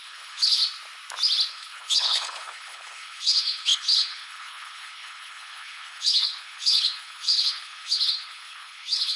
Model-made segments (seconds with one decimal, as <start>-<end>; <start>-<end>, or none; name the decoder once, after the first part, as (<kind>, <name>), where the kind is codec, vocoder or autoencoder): 0.0-0.6 (codec, HILCodec); 1.5-9.2